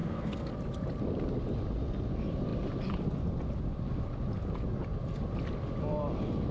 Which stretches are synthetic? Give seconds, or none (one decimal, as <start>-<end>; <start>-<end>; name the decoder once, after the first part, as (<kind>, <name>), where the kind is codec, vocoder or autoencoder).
0.0-0.5 (codec, SNAC)